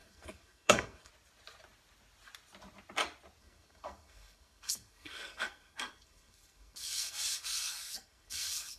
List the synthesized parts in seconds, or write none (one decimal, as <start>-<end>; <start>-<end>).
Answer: 0.0-1.1; 3.4-8.8